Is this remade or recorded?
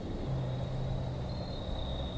recorded